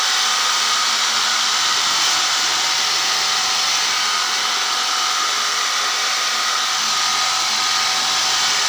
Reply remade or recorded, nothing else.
remade